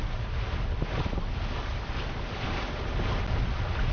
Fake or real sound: real